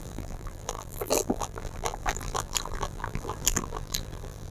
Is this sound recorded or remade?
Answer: remade